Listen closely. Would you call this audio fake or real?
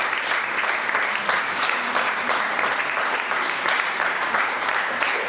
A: fake